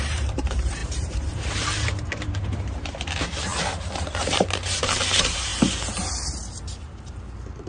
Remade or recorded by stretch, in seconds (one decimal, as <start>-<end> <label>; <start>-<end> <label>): 0.0-5.5 remade; 5.5-7.7 recorded